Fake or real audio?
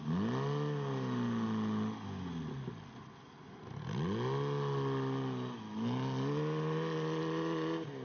real